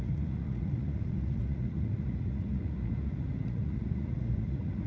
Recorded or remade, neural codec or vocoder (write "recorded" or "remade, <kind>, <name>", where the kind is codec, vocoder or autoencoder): remade, vocoder, Vocos